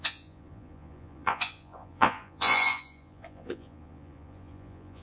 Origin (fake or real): fake